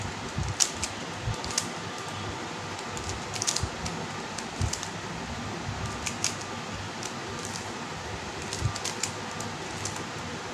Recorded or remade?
recorded